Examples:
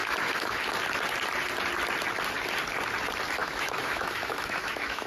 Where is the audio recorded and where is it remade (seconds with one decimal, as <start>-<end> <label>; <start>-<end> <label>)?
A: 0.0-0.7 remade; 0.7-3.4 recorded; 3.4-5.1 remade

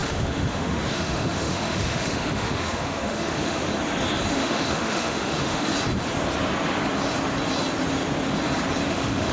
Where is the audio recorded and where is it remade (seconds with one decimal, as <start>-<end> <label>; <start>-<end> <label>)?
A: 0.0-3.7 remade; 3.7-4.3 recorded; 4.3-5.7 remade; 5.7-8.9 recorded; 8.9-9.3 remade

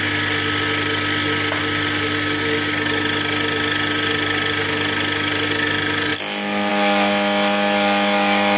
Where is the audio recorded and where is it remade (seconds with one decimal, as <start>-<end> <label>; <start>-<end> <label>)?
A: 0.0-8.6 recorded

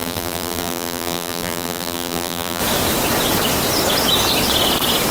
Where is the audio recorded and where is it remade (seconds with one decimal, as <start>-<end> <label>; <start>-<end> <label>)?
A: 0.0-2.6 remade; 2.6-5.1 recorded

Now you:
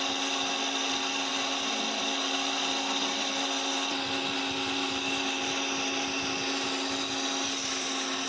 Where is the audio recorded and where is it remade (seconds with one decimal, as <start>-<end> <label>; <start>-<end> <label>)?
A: 0.0-8.3 recorded